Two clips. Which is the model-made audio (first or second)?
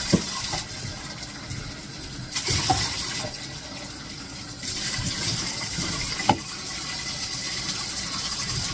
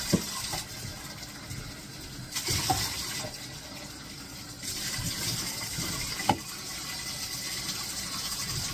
first